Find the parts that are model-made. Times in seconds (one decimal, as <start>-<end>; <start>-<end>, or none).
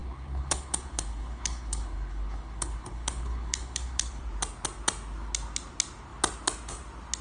0.0-4.2